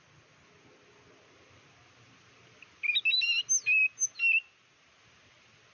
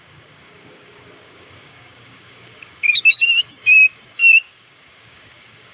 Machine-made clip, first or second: second